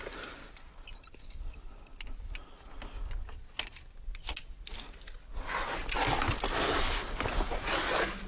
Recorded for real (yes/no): yes